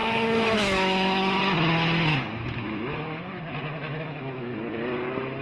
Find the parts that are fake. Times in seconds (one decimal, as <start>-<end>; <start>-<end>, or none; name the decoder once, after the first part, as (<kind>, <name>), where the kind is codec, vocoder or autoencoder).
0.0-1.4 (autoencoder, DAC-VAE); 2.1-3.4; 3.8-4.6